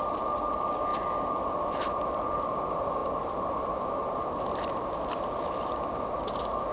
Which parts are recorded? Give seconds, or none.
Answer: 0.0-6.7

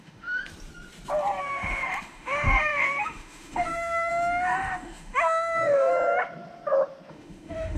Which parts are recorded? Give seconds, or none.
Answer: 0.4-1.4; 5.9-7.1

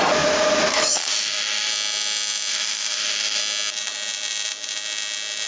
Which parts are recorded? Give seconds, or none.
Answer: 0.0-0.7; 1.7-2.5; 3.4-5.5